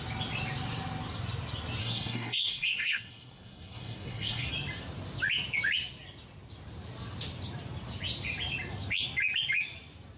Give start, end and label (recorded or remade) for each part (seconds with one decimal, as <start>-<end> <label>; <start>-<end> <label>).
0.0-1.8 recorded; 1.8-4.5 remade; 4.5-10.2 recorded